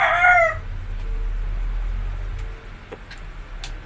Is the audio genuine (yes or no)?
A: yes